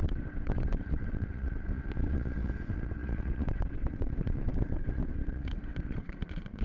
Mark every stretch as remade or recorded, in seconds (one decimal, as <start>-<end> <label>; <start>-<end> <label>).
0.0-6.6 remade